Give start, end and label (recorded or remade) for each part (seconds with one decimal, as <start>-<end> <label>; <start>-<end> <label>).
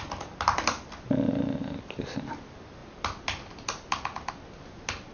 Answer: 0.0-5.1 recorded